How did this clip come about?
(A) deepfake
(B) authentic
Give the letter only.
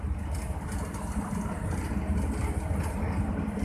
B